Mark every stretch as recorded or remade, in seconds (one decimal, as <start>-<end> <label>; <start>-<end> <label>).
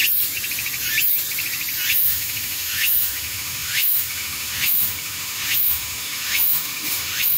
0.0-1.9 recorded; 1.9-7.4 remade